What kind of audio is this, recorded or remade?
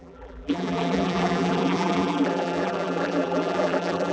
remade